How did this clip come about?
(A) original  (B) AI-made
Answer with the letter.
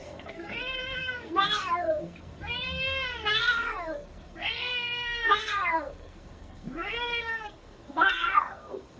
B